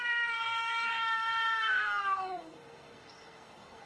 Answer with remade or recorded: remade